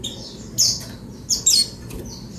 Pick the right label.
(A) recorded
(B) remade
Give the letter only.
B